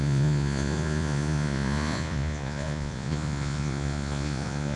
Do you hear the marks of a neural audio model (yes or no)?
yes